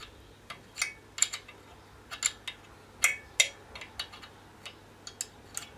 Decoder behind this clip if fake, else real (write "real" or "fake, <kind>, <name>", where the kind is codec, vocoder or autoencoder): real